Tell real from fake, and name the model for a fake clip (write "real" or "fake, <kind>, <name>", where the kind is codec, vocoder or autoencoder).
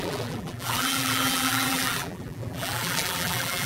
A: fake, vocoder, BigVGAN v2